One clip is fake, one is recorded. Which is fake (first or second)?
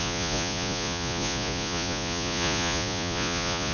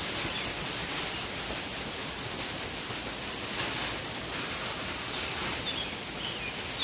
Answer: first